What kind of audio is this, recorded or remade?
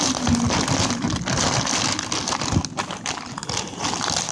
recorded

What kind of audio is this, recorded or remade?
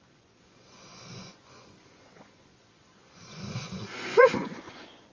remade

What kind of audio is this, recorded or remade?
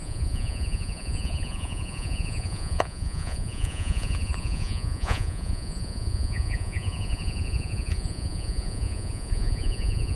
remade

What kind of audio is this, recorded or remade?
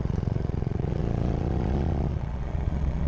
remade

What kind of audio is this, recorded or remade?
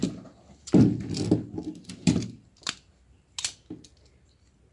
recorded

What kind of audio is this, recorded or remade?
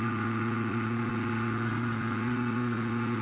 remade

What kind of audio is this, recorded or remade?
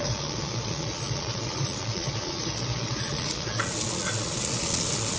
remade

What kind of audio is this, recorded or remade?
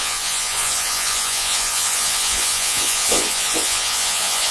remade